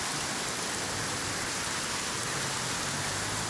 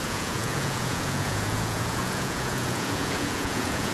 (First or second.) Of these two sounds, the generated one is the second